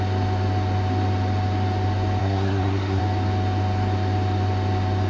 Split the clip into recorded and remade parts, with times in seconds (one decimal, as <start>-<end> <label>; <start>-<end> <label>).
0.0-2.2 recorded; 2.2-3.0 remade; 3.0-5.1 recorded

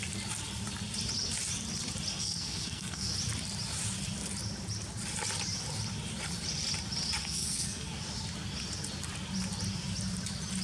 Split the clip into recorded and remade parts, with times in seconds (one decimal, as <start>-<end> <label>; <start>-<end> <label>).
0.0-2.1 recorded; 2.1-3.1 remade; 3.1-7.2 recorded; 7.2-7.9 remade; 7.9-10.6 recorded

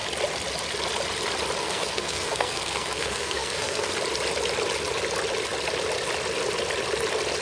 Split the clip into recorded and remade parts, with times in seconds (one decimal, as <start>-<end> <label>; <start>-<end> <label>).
0.0-1.6 recorded; 1.6-3.9 remade; 3.9-7.4 recorded

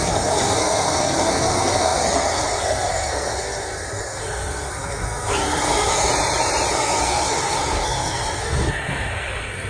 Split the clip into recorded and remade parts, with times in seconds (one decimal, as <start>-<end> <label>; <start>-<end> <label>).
0.0-6.1 remade; 6.1-6.7 recorded; 6.7-9.7 remade